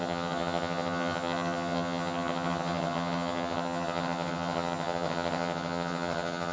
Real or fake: fake